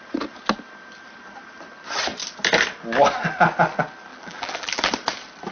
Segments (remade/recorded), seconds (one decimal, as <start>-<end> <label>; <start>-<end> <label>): 0.0-4.1 recorded; 4.1-4.9 remade; 4.9-5.5 recorded

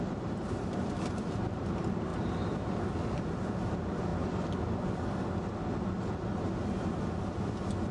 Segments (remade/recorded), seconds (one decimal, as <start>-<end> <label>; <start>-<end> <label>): 0.0-2.1 remade; 2.1-3.5 recorded; 3.5-4.1 remade; 4.1-7.9 recorded

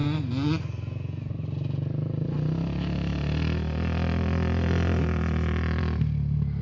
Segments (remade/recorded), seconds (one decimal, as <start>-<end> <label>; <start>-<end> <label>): 0.0-6.6 recorded

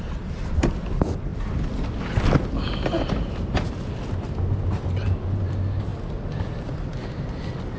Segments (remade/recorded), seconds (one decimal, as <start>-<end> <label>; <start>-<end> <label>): 0.0-1.3 recorded; 1.3-3.7 remade; 3.7-7.8 recorded

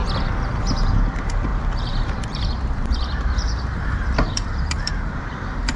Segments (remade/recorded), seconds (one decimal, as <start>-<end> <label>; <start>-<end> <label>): 0.0-0.6 recorded; 0.6-5.8 remade

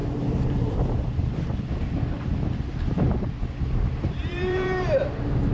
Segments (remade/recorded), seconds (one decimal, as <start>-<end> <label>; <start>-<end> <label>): 0.0-1.1 remade; 1.1-4.2 recorded; 4.2-5.5 remade

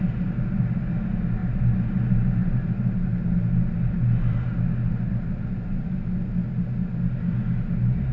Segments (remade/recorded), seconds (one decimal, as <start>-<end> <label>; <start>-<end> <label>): 0.0-8.1 recorded